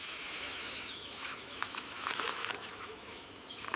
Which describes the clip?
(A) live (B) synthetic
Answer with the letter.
B